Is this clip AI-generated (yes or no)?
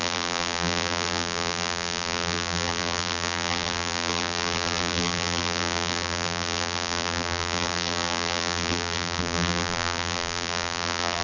yes